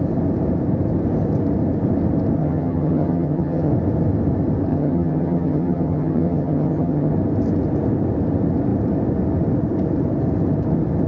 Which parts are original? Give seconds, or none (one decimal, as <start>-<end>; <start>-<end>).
0.0-2.4; 3.7-4.7; 7.1-11.1